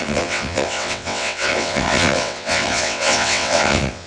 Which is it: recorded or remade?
remade